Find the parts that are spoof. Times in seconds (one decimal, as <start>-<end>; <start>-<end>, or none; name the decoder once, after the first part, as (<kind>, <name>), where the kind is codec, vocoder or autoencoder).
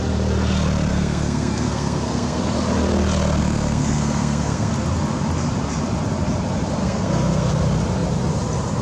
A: 0.9-2.4 (codec, SNAC); 3.4-4.7; 6.8-7.5